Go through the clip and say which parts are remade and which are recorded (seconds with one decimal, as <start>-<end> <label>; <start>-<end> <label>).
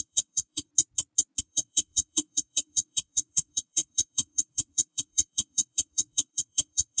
0.0-0.7 remade; 0.7-1.4 recorded; 1.4-7.0 remade